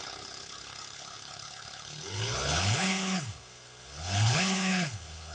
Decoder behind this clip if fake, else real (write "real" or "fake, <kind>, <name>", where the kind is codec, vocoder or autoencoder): fake, codec, HILCodec